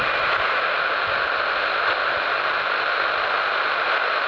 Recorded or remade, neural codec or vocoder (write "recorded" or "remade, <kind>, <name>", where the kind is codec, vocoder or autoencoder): recorded